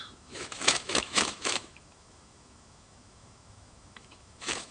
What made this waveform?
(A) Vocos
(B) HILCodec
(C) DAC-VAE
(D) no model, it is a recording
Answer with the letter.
C